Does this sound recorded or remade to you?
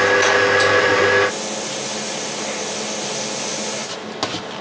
recorded